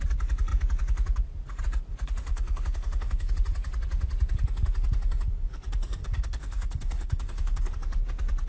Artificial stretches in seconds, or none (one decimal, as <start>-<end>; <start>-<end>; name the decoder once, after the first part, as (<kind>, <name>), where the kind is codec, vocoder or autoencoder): 2.3-3.3 (codec, SNAC); 6.0-7.7

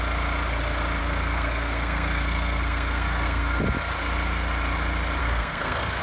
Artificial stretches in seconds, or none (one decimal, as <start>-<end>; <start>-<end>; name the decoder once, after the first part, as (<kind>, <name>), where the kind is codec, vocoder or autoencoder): 1.0-3.6 (codec, SNAC); 5.2-6.0

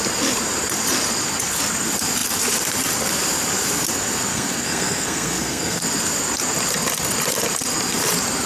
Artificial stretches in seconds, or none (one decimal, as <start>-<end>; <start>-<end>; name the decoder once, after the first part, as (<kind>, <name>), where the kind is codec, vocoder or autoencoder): 4.3-5.8 (codec, SNAC)